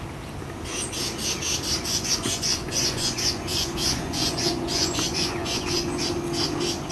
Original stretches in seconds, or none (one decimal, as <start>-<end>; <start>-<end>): 0.0-1.9; 6.0-6.9